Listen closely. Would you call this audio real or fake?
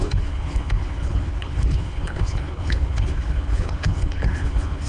fake